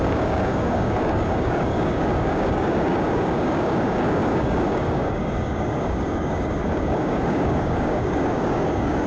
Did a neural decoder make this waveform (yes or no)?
yes